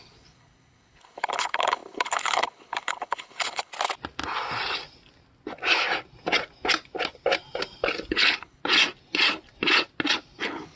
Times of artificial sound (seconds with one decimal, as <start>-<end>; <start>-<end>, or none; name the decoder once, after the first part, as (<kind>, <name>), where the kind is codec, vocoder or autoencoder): 0.0-3.7 (codec, HILCodec); 8.1-8.6; 10.4-10.8